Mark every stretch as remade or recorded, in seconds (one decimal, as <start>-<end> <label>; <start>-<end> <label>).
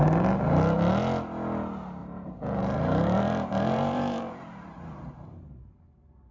0.0-2.0 recorded; 2.0-5.6 remade; 5.6-6.3 recorded